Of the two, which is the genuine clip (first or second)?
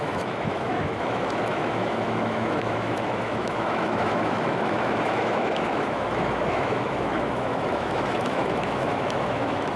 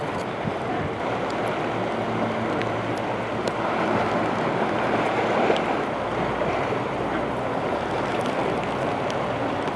second